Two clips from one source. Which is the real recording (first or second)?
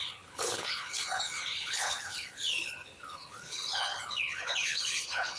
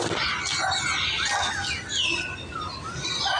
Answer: second